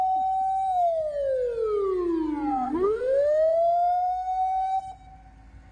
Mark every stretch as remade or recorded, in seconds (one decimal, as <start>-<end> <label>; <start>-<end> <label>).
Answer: 0.0-2.5 recorded; 2.5-4.8 remade; 4.8-5.7 recorded

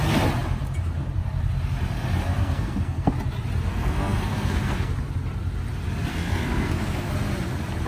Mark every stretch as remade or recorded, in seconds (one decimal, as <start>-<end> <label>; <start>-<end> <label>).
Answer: 0.0-2.4 recorded; 2.4-3.1 remade; 3.1-3.7 recorded; 3.7-4.9 remade; 4.9-6.1 recorded; 6.1-7.1 remade; 7.1-7.9 recorded

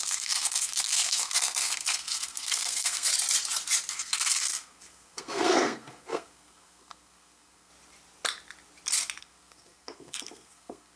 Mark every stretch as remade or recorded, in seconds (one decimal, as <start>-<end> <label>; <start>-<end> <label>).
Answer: 0.0-3.1 remade; 3.1-3.9 recorded; 3.9-7.7 remade; 7.7-9.2 recorded; 9.2-11.0 remade